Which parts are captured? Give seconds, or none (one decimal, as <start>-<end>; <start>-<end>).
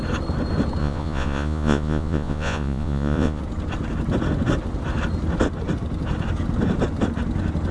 0.0-0.8; 3.4-7.7